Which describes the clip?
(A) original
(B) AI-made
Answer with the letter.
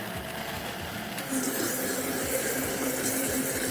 A